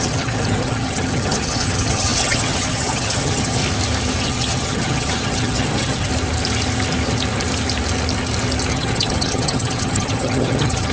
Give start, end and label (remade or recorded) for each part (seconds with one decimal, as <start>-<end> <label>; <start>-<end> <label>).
0.0-3.6 remade; 3.6-4.2 recorded; 4.2-6.1 remade; 6.1-8.7 recorded; 8.7-10.9 remade